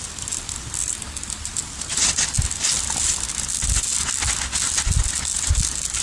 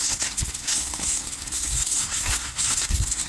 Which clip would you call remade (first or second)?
second